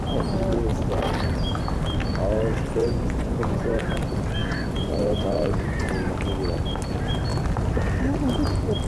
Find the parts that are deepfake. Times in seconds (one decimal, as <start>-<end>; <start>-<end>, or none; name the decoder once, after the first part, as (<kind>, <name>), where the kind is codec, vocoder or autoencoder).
2.8-3.9 (vocoder, Vocos); 4.4-6.1